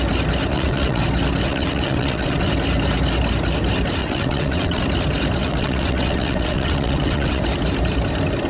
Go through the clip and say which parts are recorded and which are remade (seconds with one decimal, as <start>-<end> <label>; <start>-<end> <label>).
0.0-0.5 recorded; 0.5-1.0 remade; 1.0-1.5 recorded; 1.5-2.4 remade; 2.4-4.0 recorded; 4.0-4.8 remade; 4.8-5.4 recorded; 5.4-7.4 remade; 7.4-8.5 recorded